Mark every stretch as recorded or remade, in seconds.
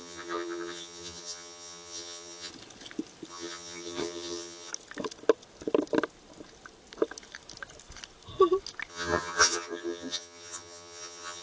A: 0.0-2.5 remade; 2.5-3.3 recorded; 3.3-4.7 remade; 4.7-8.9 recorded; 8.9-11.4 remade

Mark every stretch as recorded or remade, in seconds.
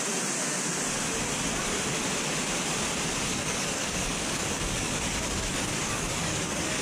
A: 0.0-3.3 recorded; 3.3-6.8 remade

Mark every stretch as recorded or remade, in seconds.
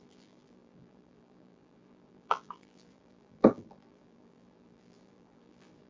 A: 0.0-5.9 remade